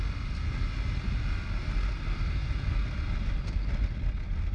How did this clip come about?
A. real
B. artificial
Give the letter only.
A